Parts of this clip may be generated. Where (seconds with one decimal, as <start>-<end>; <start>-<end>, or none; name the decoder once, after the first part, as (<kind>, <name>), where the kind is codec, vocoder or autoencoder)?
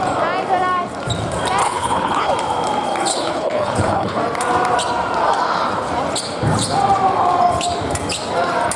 1.6-2.3 (codec, HILCodec); 3.1-4.2